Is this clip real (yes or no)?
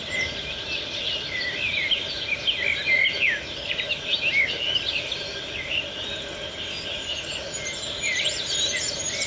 yes